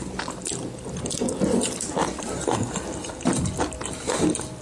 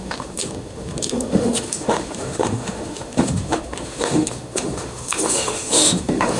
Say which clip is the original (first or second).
first